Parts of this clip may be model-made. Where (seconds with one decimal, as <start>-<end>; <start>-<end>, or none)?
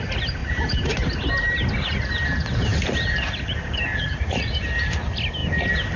3.9-4.5